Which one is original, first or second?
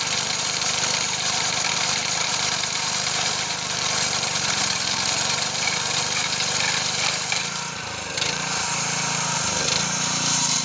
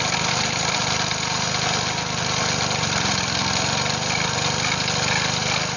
second